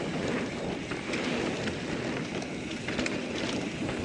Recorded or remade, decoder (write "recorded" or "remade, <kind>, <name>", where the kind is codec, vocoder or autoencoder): recorded